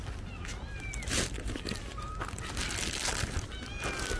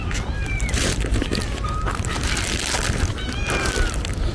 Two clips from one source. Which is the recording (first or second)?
first